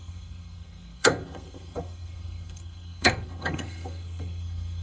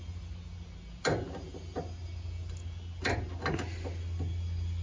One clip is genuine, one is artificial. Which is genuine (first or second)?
second